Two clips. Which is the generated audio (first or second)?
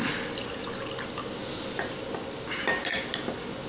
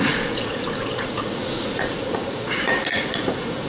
second